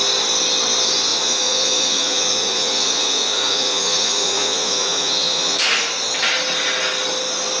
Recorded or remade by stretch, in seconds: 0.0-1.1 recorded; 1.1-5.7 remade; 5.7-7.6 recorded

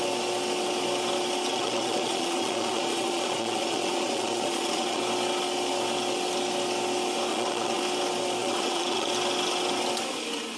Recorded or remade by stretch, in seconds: 0.0-1.5 recorded; 1.5-5.0 remade; 5.0-7.3 recorded; 7.3-7.8 remade; 7.8-8.4 recorded; 8.4-9.1 remade; 9.1-10.6 recorded

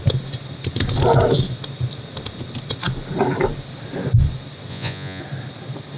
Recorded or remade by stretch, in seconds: 0.0-4.7 recorded; 4.7-5.2 remade; 5.2-6.0 recorded

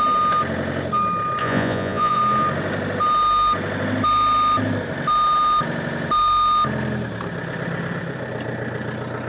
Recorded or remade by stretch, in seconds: 0.0-1.4 recorded; 1.4-2.2 remade; 2.2-9.3 recorded

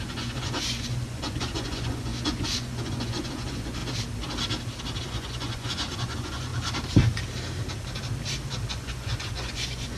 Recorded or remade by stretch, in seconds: 0.0-3.8 remade; 3.8-5.0 recorded; 5.0-6.5 remade; 6.5-8.7 recorded; 8.7-10.0 remade

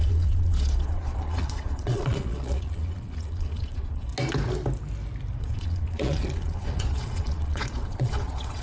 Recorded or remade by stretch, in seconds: 0.0-4.1 remade; 4.1-5.4 recorded; 5.4-8.6 remade

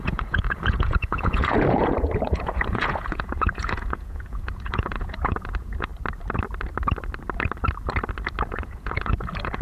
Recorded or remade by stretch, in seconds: 0.0-5.9 remade; 5.9-8.5 recorded; 8.5-9.6 remade